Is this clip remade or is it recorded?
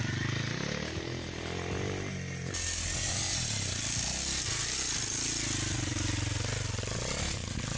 recorded